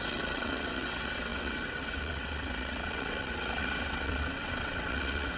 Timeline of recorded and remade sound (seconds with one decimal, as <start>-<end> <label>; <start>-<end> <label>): 0.0-5.4 remade